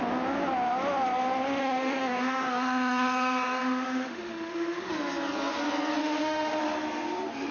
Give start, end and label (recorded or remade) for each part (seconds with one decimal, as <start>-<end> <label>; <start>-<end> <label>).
0.0-1.6 recorded; 1.6-4.9 remade; 4.9-6.0 recorded; 6.0-6.6 remade; 6.6-7.5 recorded